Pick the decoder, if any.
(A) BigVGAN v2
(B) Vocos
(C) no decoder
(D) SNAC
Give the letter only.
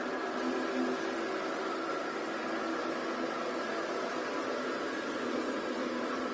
C